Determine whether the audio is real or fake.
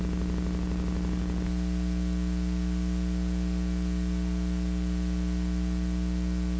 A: real